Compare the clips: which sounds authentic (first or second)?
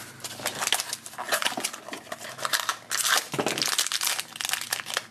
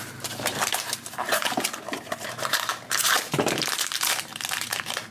first